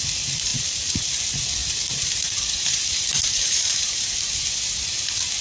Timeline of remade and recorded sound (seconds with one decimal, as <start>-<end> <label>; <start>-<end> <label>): 0.0-0.5 recorded; 0.5-1.2 remade; 1.2-1.6 recorded; 1.6-4.8 remade; 4.8-5.4 recorded